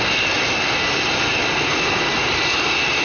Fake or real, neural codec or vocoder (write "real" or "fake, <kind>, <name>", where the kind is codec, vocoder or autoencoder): real